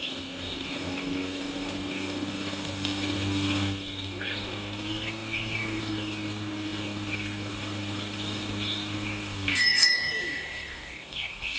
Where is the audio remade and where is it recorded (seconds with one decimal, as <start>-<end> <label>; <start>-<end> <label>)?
0.0-11.6 remade